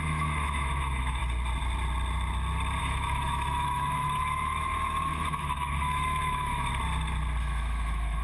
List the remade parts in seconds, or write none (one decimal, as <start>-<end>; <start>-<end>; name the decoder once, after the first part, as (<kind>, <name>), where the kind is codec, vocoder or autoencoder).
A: 0.0-1.2 (autoencoder, DAC-VAE); 2.8-6.7; 7.4-8.2